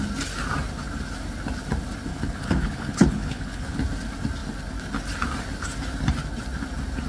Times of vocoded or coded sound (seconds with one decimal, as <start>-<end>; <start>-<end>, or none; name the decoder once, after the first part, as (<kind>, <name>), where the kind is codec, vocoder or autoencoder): 2.1-3.8 (codec, HILCodec)